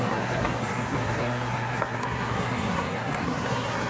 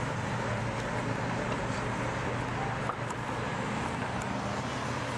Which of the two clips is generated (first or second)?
first